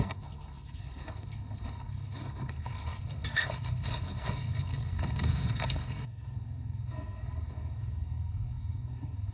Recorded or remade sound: remade